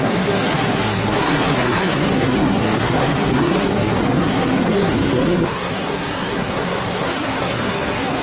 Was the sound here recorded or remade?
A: remade